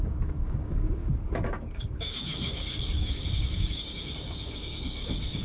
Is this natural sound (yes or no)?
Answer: no